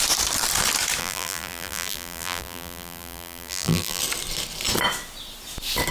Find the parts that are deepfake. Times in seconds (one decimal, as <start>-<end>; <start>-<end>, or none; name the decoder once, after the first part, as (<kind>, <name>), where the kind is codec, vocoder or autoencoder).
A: 1.0-4.0 (vocoder, BigVGAN v2)